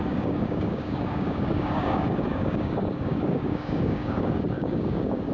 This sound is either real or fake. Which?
fake